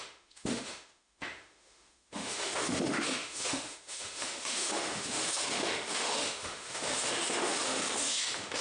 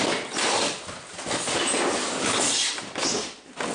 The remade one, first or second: first